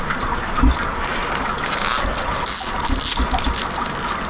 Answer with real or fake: real